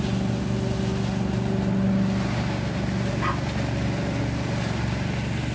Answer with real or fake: real